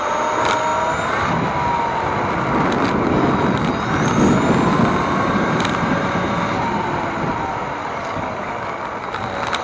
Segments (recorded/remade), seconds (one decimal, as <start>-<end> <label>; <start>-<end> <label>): 0.0-7.8 recorded; 7.8-8.8 remade; 8.8-9.6 recorded